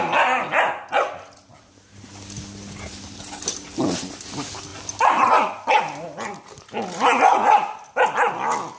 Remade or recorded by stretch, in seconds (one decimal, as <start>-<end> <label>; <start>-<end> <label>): 0.0-1.5 recorded; 1.5-2.9 remade; 2.9-4.7 recorded; 4.7-5.3 remade; 5.3-8.8 recorded